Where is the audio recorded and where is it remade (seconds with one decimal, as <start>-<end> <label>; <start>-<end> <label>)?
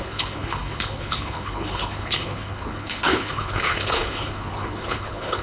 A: 0.0-5.4 remade